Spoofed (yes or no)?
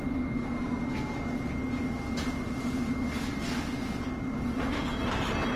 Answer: no